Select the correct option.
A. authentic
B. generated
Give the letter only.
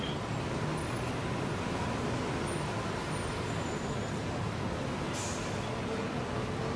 A